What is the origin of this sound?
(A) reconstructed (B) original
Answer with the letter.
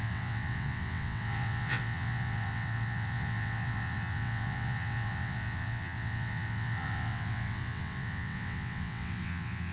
A